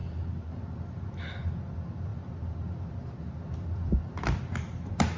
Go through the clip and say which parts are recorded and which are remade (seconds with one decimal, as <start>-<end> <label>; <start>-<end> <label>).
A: 0.0-5.2 recorded